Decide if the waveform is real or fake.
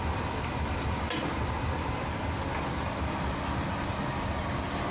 real